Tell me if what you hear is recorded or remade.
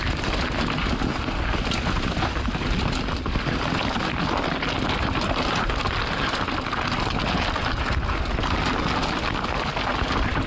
recorded